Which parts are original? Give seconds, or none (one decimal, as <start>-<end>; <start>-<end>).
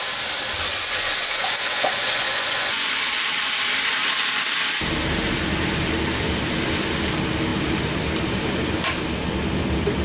0.0-0.7; 3.0-10.0